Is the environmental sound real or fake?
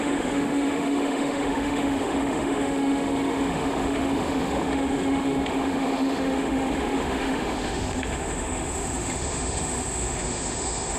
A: fake